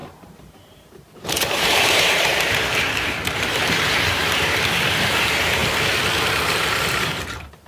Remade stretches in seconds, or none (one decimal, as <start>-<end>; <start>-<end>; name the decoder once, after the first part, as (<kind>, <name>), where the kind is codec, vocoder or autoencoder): 0.0-5.6 (vocoder, BigVGAN v2); 6.6-7.7